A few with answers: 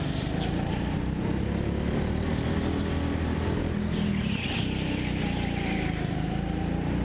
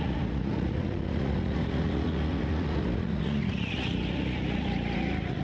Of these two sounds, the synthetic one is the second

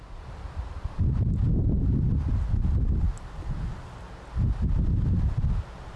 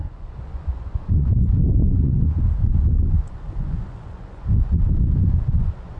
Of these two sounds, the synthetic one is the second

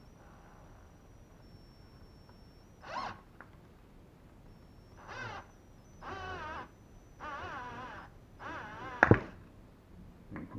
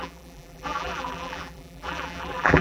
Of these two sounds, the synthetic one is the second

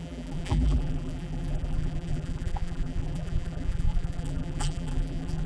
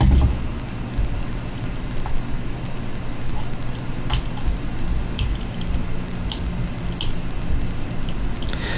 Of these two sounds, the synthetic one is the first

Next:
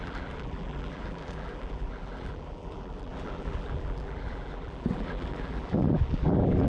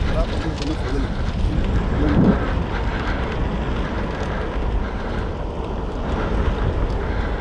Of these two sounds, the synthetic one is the first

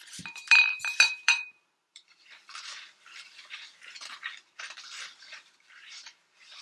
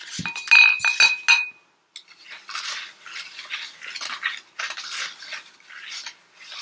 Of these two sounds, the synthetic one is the first